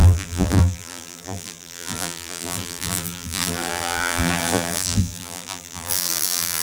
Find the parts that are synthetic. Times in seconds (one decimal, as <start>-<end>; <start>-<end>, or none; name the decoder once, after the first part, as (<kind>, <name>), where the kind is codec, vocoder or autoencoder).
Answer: 0.0-6.6 (vocoder, BigVGAN v2)